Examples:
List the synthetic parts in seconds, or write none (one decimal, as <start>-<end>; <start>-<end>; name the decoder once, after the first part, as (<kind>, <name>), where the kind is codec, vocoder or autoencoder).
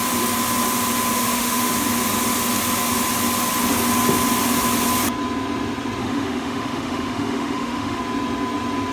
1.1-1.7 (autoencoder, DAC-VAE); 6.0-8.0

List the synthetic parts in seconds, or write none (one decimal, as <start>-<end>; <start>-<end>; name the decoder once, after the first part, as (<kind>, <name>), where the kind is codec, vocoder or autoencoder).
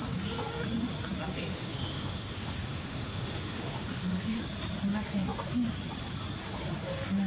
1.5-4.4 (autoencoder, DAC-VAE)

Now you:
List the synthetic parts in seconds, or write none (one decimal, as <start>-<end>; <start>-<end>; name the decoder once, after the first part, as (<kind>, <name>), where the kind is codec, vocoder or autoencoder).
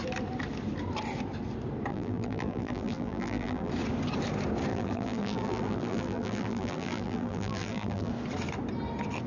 1.9-3.7 (vocoder, BigVGAN v2); 4.7-8.1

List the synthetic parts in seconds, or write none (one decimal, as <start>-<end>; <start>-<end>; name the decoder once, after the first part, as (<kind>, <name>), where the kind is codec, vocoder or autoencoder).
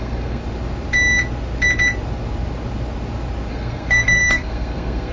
0.0-0.4 (codec, SNAC); 3.5-5.1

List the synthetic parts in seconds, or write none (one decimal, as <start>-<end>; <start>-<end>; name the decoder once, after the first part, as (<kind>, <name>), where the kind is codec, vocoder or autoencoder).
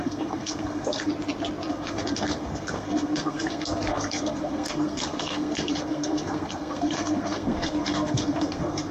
0.0-1.1 (codec, SNAC); 1.7-8.9